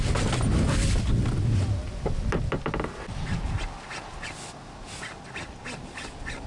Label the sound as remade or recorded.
recorded